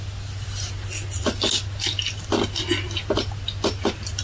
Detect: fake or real real